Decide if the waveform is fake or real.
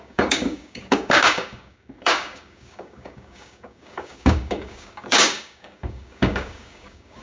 fake